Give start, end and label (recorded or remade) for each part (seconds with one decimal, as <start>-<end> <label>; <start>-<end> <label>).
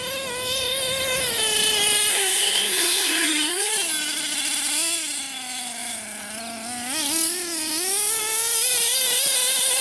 0.0-2.1 recorded; 2.1-3.7 remade; 3.7-9.8 recorded